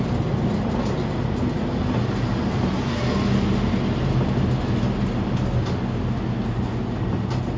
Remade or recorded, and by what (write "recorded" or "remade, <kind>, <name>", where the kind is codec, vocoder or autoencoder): recorded